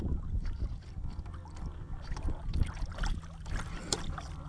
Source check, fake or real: fake